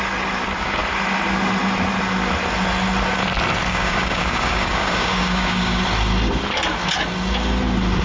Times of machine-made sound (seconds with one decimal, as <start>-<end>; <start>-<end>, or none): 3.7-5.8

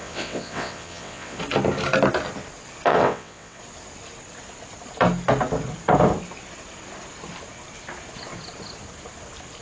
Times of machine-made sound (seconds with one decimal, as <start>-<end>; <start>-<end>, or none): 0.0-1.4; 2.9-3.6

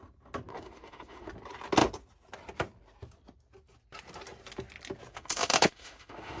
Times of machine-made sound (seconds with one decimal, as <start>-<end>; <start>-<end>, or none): 0.5-1.3; 5.1-6.4

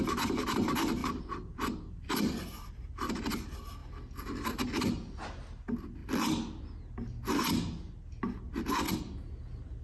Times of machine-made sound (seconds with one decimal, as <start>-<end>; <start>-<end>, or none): 1.0-3.1

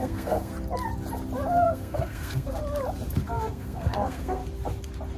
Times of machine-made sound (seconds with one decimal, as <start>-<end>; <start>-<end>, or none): 0.0-0.5; 1.5-2.6; 3.2-4.4